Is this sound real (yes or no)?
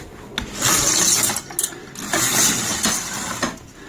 yes